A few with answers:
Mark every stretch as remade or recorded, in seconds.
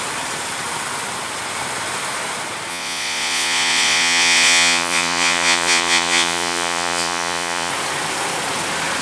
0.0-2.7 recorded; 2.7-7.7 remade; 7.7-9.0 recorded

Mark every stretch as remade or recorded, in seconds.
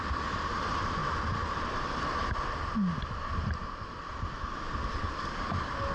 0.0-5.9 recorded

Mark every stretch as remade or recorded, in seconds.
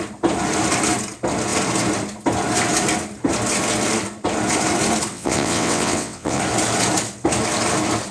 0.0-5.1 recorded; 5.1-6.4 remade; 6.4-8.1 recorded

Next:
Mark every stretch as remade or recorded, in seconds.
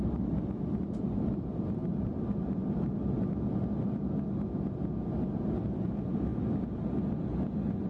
0.0-1.8 remade; 1.8-5.8 recorded; 5.8-6.3 remade; 6.3-7.5 recorded; 7.5-7.9 remade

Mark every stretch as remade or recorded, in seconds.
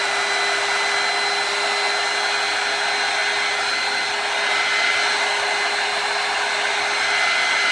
0.0-7.7 recorded